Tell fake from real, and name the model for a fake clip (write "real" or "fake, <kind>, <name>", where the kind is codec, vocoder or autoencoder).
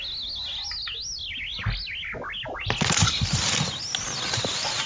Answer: real